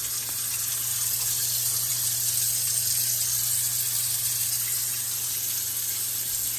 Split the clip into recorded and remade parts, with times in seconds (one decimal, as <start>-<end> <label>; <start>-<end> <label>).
0.0-6.6 recorded